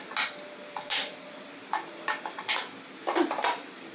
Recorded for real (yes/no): yes